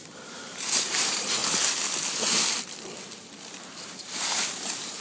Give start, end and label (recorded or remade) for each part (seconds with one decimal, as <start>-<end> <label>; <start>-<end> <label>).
0.0-1.4 remade; 1.4-3.6 recorded; 3.6-5.0 remade